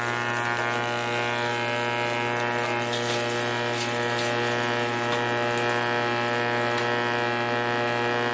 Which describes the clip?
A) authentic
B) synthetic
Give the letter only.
A